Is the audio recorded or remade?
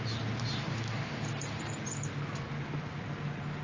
recorded